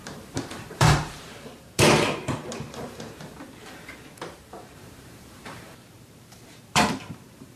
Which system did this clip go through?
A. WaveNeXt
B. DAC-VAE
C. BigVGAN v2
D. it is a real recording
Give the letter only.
C